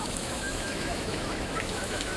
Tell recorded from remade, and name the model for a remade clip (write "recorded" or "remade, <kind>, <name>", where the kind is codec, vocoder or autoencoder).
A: remade, autoencoder, DAC-VAE